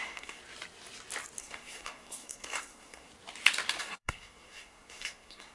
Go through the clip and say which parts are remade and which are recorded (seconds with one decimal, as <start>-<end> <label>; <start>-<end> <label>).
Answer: 0.0-0.4 remade; 0.4-1.4 recorded; 1.4-3.1 remade; 3.1-3.8 recorded; 3.8-5.5 remade

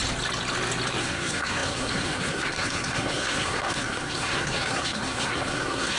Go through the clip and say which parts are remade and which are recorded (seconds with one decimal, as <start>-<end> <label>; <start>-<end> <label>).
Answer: 0.0-1.0 recorded; 1.0-6.0 remade

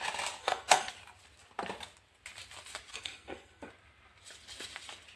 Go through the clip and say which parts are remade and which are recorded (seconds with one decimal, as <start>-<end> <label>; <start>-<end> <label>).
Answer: 0.0-0.4 recorded; 0.4-0.9 remade; 0.9-2.9 recorded; 2.9-3.7 remade; 3.7-5.2 recorded

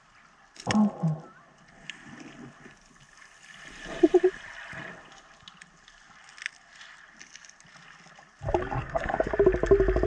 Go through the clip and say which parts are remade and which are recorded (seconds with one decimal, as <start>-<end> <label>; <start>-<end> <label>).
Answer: 0.0-8.8 recorded; 8.8-9.3 remade; 9.3-10.1 recorded

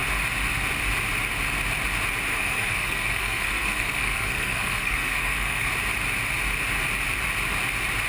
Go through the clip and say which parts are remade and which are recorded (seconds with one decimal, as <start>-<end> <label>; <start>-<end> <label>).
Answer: 0.0-2.3 recorded; 2.3-5.7 remade; 5.7-8.1 recorded

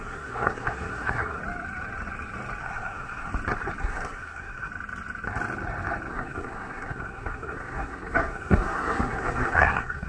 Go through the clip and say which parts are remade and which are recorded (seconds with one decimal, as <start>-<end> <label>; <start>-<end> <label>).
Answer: 0.0-1.4 remade; 1.4-2.6 recorded; 2.6-3.3 remade; 3.3-3.8 recorded; 3.8-4.7 remade; 4.7-6.1 recorded; 6.1-10.1 remade

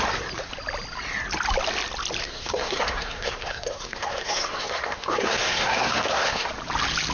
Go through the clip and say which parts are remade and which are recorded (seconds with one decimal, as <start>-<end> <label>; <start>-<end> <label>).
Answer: 0.0-2.2 recorded; 2.2-6.5 remade; 6.5-7.1 recorded

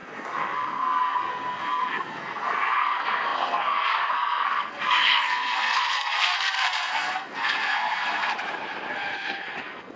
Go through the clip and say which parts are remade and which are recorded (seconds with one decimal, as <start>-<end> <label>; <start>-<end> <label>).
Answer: 0.0-8.3 remade; 8.3-8.9 recorded; 8.9-10.0 remade